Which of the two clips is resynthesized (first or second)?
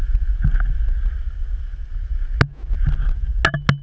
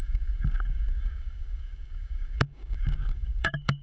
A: second